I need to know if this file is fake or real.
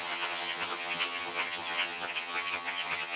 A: fake